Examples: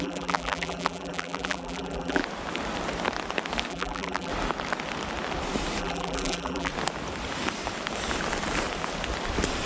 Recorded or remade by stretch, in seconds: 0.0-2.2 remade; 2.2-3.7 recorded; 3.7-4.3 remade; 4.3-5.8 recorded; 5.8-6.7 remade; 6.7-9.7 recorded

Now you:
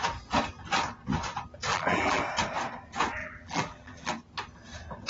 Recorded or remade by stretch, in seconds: 0.0-1.7 recorded; 1.7-2.2 remade; 2.2-3.2 recorded; 3.2-4.1 remade; 4.1-5.1 recorded

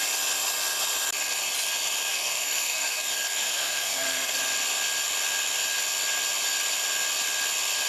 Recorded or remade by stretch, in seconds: 0.0-2.1 recorded; 2.1-3.0 remade; 3.0-3.4 recorded; 3.4-4.4 remade; 4.4-7.9 recorded